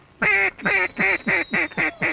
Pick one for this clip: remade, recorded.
recorded